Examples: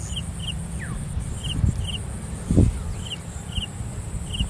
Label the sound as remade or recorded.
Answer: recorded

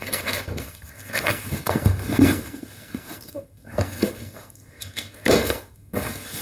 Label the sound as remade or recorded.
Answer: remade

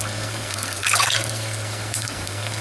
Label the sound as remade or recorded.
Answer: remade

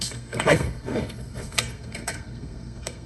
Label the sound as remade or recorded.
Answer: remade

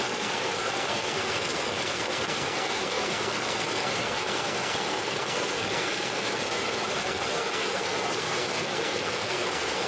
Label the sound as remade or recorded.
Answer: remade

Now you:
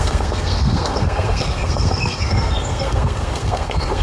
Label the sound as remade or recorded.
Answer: remade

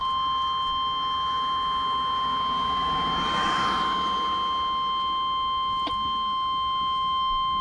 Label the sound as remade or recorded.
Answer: recorded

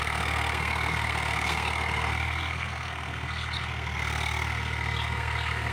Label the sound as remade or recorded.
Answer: remade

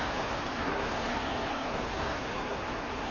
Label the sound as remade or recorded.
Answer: remade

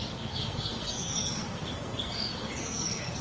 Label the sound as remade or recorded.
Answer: remade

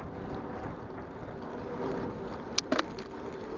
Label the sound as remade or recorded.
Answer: recorded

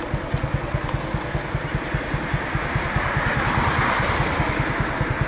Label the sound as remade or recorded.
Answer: recorded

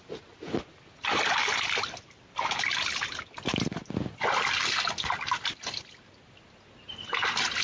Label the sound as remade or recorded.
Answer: recorded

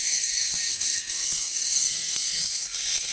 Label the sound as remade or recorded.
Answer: remade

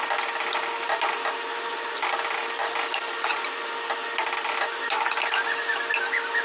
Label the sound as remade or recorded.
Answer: recorded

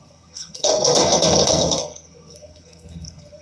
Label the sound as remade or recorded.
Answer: remade